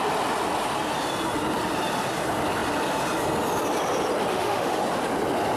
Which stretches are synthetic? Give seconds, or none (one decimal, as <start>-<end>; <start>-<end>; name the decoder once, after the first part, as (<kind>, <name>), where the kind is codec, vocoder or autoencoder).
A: 4.3-4.8 (autoencoder, DAC-VAE)